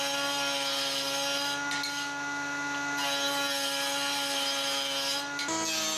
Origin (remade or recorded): recorded